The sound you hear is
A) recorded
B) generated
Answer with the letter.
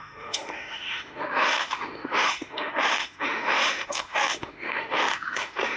B